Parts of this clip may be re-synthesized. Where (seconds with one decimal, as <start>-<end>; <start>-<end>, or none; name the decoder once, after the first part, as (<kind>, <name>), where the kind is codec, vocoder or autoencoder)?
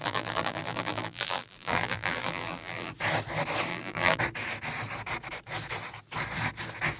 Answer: 0.0-2.9 (vocoder, BigVGAN v2); 3.7-4.2